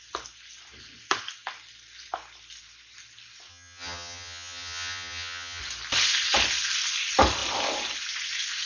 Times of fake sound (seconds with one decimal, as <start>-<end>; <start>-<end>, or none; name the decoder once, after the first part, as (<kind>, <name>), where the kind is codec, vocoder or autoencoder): 3.5-5.6 (vocoder, HiFi-GAN)